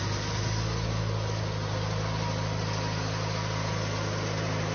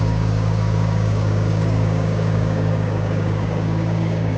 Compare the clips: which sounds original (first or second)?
first